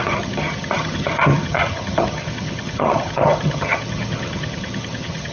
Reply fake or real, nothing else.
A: fake